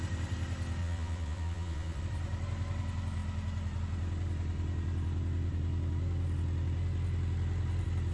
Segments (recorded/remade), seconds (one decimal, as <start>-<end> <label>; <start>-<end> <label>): 0.0-0.8 recorded; 0.8-2.0 remade; 2.0-8.1 recorded